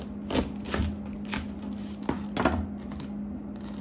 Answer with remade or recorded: recorded